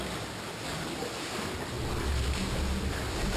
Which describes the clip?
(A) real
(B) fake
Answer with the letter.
A